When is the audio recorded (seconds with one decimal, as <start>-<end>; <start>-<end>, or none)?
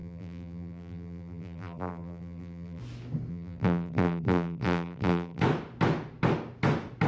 2.8-3.3; 5.4-7.1